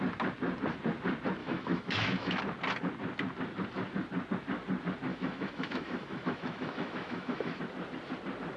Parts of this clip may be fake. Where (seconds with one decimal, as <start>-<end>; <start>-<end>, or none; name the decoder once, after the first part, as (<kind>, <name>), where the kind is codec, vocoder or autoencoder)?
1.4-2.4 (autoencoder, DAC-VAE); 5.1-7.6